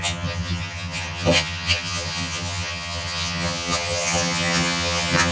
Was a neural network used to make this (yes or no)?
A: yes